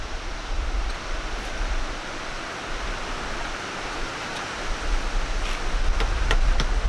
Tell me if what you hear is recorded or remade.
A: recorded